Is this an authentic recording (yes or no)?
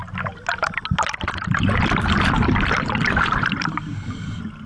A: yes